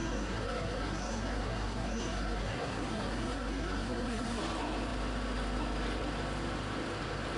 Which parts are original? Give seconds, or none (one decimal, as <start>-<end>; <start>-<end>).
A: 4.4-7.4